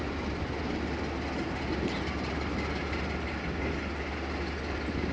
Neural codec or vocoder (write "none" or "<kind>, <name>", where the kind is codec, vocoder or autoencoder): none